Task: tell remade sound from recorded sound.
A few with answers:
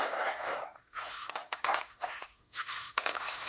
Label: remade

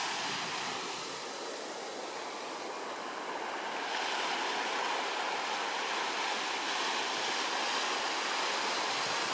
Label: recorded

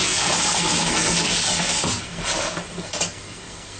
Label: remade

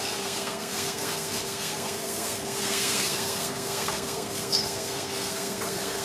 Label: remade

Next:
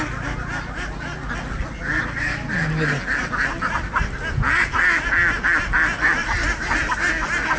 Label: recorded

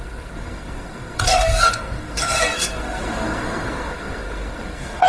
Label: remade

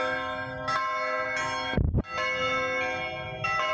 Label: recorded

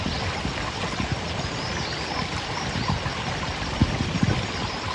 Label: recorded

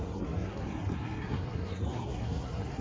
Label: remade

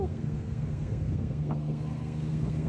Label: remade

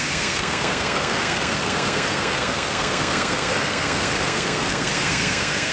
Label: remade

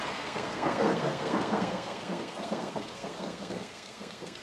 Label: remade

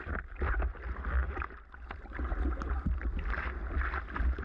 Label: recorded